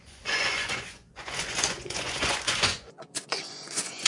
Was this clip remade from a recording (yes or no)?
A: yes